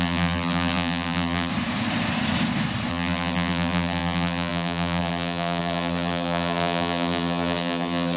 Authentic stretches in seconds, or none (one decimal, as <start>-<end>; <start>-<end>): 1.5-2.9